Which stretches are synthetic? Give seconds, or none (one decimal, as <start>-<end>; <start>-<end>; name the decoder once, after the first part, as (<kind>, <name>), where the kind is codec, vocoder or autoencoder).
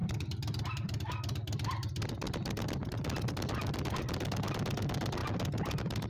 none